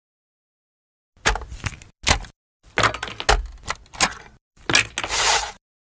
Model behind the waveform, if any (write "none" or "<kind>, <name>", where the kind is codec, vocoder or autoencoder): none